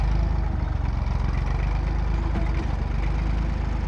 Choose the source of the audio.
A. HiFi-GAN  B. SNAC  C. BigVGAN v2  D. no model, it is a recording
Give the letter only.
D